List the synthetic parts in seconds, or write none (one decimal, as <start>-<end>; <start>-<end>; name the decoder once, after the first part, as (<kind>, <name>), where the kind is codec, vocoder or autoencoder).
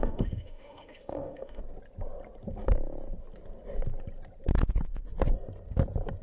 0.0-1.6 (autoencoder, DAC-VAE)